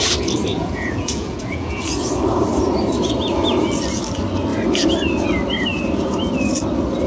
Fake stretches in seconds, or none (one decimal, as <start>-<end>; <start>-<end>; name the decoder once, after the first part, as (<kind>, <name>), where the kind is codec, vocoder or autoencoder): 0.5-1.9 (vocoder, Vocos)